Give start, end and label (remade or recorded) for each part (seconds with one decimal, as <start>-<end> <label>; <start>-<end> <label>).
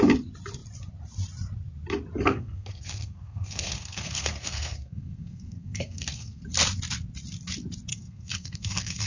0.0-2.3 recorded; 2.3-6.4 remade; 6.4-7.9 recorded; 7.9-9.1 remade